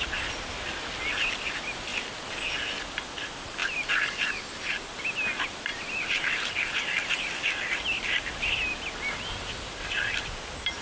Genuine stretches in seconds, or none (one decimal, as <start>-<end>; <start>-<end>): 0.0-10.8